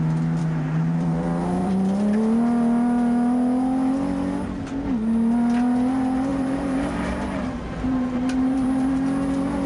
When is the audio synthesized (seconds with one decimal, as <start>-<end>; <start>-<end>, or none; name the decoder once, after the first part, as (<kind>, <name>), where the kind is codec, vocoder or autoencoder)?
0.4-1.7 (vocoder, BigVGAN v2); 6.3-8.9